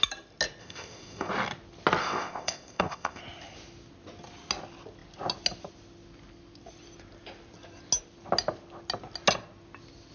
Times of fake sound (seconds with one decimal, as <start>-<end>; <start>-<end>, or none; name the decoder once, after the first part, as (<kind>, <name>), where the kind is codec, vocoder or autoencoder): 0.6-1.3 (codec, ZipCodec); 2.0-3.2